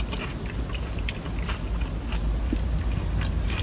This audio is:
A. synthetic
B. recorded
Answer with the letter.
B